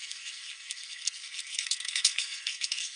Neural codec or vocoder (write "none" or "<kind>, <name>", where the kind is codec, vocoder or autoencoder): codec, SNAC